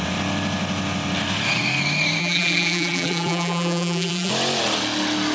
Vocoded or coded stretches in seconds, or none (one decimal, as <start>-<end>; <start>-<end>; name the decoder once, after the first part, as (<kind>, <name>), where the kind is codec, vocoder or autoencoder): 2.2-4.3 (vocoder, BigVGAN v2)